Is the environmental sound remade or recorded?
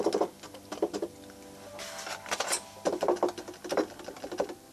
recorded